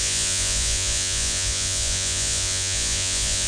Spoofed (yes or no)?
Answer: yes